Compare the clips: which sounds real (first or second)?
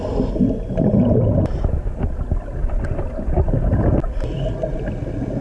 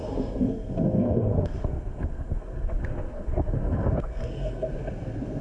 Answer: first